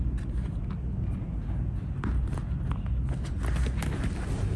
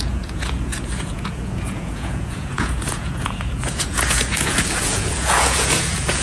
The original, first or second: first